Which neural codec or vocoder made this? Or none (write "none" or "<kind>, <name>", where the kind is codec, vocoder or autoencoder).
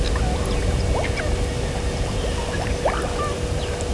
none